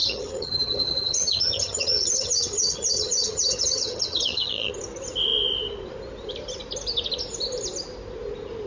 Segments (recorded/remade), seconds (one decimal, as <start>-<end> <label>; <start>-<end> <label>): 0.0-4.7 remade; 4.7-8.7 recorded